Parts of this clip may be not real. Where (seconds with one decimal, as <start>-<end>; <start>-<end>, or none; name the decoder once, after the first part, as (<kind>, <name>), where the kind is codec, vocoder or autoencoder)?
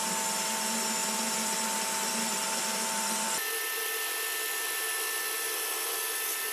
none